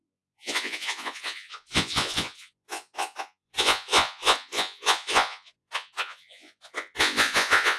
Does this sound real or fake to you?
fake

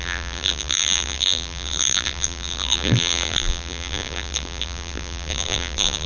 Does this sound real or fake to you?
fake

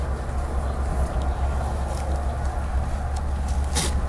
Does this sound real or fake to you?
real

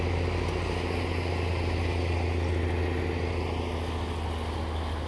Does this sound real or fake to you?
real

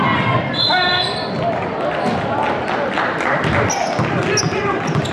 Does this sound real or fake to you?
real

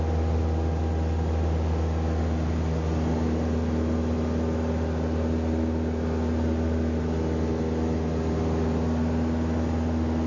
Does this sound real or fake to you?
real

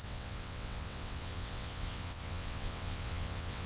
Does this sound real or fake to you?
fake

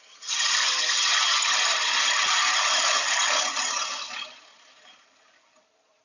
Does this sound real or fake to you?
real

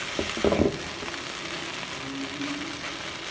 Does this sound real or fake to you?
real